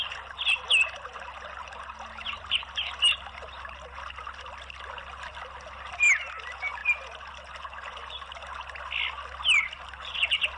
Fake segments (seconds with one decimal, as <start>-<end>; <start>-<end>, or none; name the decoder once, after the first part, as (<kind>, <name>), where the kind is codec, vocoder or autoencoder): none